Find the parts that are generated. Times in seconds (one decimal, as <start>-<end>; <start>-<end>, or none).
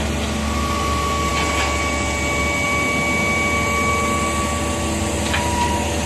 none